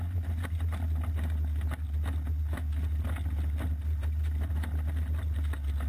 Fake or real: real